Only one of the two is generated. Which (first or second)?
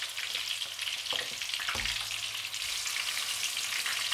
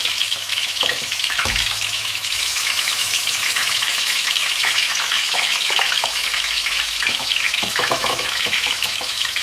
second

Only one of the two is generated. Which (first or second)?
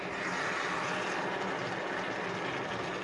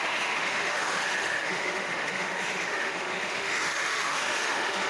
second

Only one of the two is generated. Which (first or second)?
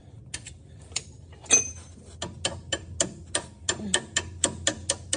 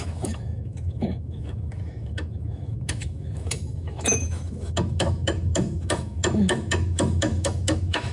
second